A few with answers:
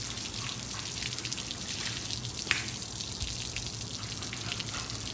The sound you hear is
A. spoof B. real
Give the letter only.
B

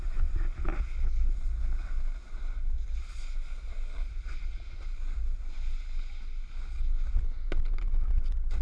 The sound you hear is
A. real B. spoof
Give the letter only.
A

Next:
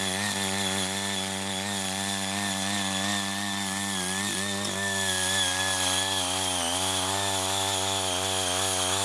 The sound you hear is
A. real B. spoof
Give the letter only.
A